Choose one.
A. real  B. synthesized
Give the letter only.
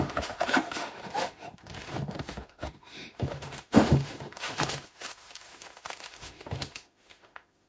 B